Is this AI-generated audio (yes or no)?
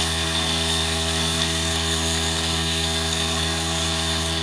yes